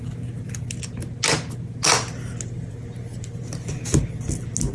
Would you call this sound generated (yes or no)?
no